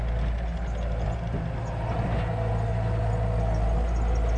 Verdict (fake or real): real